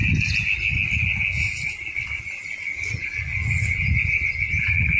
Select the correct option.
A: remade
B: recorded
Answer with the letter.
B